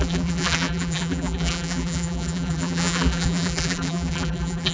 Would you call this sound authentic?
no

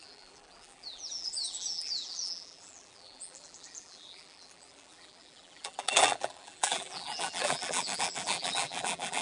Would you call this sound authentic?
no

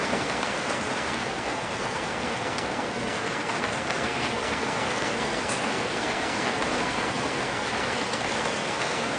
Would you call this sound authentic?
no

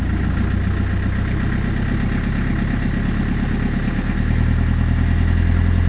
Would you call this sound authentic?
yes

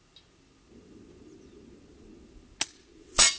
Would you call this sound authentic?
yes